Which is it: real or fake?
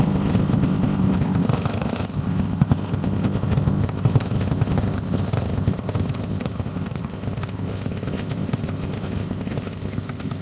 fake